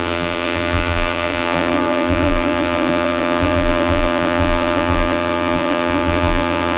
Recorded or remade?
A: remade